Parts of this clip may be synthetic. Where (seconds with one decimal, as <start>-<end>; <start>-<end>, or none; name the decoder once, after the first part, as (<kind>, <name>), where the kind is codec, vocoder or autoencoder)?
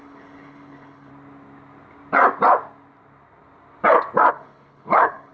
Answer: 0.0-1.1 (codec, HILCodec); 4.3-5.3